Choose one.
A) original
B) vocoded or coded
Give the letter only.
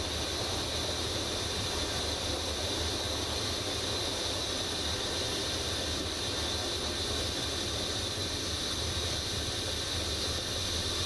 A